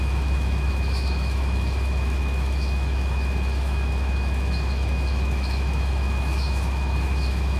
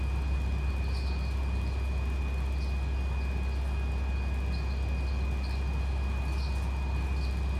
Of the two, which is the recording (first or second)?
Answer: second